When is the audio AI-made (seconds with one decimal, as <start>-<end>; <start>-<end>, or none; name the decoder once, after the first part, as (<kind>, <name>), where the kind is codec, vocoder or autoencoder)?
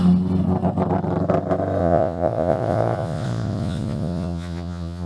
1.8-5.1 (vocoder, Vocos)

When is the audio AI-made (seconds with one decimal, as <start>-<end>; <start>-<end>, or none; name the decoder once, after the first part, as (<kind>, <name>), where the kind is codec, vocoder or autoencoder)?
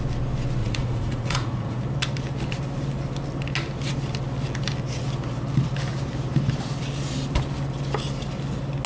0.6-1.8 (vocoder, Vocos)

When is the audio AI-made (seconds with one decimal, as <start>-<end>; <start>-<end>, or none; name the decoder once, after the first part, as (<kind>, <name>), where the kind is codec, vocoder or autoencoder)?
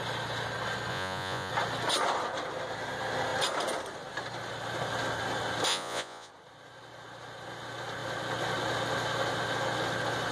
0.9-1.5 (vocoder, Vocos); 5.7-6.3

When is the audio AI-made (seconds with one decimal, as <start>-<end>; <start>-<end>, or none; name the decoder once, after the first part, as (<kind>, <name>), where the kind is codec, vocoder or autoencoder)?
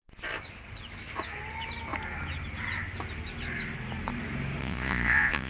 4.6-5.5 (vocoder, Vocos)